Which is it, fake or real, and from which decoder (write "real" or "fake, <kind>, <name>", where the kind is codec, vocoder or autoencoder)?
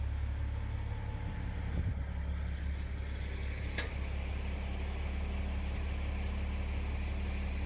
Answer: real